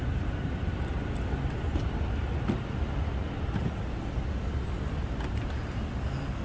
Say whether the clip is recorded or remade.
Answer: recorded